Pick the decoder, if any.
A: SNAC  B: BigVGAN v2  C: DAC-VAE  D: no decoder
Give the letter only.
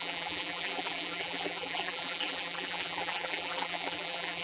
B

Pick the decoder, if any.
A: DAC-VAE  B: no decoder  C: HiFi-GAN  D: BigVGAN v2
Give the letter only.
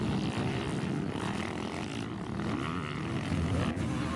B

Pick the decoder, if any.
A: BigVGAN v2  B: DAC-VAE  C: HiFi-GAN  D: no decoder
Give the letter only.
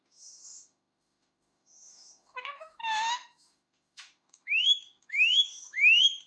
B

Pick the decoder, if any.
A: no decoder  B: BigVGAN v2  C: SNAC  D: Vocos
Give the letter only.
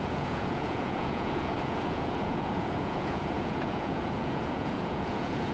D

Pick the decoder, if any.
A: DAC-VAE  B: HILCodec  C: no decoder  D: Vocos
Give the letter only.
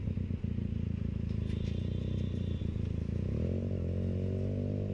C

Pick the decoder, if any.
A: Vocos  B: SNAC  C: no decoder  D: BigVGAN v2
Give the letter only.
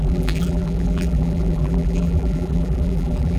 D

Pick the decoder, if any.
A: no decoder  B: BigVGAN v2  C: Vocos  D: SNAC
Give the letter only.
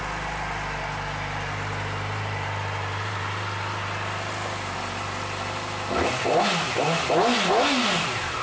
A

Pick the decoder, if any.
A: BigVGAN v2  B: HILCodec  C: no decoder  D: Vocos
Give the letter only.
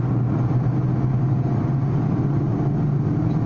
C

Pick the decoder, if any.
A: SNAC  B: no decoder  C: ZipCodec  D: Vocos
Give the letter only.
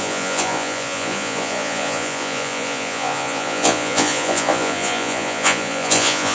D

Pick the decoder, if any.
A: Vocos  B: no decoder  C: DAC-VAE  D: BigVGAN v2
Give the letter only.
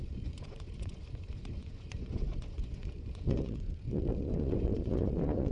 A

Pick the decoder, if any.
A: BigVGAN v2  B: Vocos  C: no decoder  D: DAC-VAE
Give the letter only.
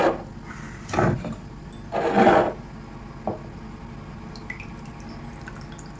C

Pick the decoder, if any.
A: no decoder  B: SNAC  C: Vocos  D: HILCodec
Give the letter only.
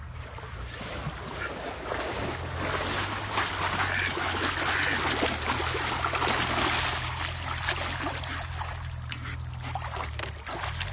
A